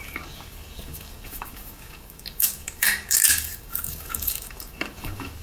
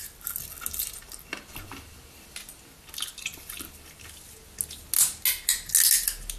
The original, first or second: second